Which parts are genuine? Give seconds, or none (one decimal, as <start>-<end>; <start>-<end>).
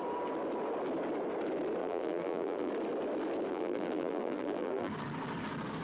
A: 0.0-1.8; 2.7-3.5; 4.9-5.8